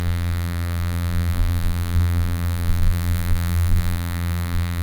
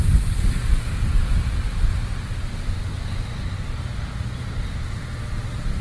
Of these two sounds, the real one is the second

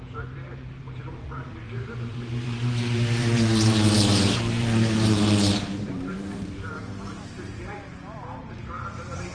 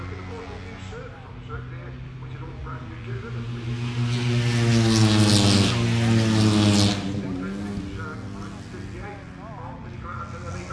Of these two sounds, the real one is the second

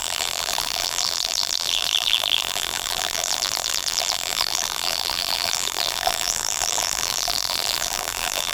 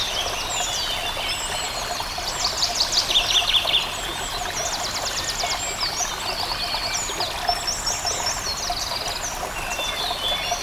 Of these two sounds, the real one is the second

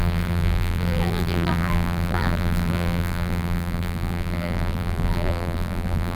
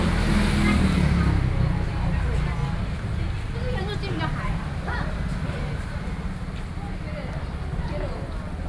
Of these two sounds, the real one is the second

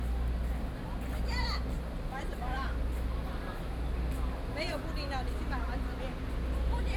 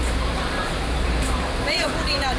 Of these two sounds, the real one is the first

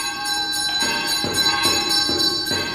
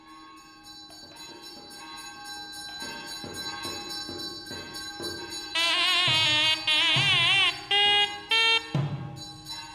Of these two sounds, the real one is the second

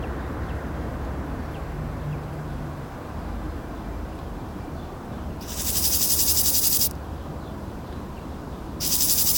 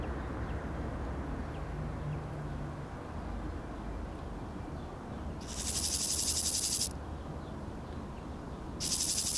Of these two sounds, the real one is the second